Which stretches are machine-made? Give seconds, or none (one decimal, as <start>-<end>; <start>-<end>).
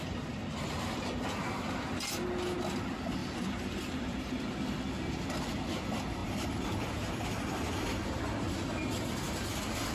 3.2-4.3; 6.2-6.9